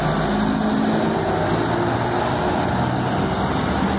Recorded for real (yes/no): yes